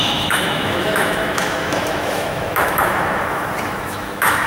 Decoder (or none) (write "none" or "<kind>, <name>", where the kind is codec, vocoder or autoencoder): autoencoder, DAC-VAE